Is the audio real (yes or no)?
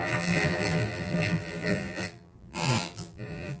no